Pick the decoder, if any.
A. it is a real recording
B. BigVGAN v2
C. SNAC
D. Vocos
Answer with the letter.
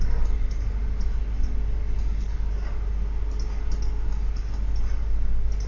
A